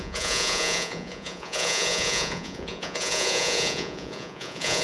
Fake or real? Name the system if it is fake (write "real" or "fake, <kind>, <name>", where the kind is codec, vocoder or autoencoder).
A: fake, vocoder, Vocos